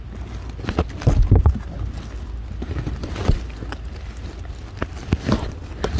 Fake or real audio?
real